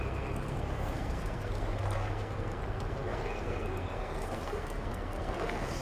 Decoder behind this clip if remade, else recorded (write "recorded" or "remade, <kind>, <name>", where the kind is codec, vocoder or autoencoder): remade, codec, SNAC